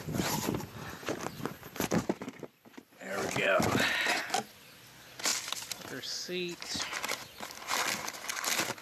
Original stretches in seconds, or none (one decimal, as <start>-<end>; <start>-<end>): 0.0-8.8